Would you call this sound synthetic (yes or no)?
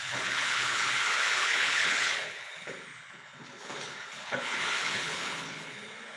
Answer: yes